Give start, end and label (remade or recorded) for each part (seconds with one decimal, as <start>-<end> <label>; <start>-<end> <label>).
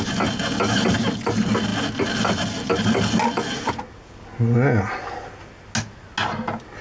0.0-6.8 recorded